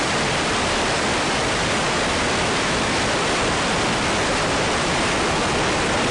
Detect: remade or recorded remade